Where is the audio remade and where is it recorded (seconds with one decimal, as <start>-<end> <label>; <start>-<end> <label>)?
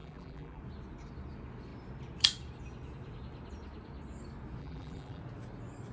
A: 0.0-0.6 remade; 0.6-4.6 recorded; 4.6-5.2 remade; 5.2-5.9 recorded